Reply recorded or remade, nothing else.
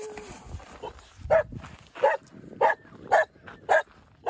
recorded